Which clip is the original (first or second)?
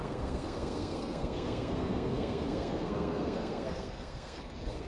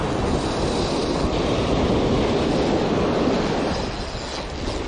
second